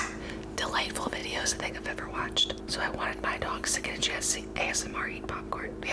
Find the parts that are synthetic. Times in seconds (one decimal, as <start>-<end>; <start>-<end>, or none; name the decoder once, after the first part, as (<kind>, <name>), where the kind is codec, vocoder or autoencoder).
none